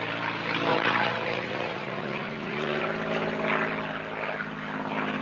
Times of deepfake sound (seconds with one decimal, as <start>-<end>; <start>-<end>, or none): 0.7-2.8